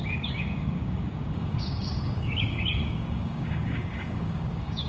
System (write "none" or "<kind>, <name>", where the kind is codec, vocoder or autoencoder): codec, DAC